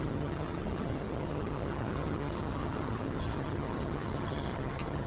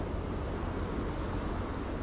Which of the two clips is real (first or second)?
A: second